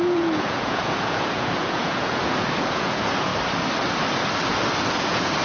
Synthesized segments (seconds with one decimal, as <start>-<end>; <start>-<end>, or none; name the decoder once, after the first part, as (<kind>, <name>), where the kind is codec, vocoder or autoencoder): 0.0-3.3 (vocoder, Vocos); 4.9-5.4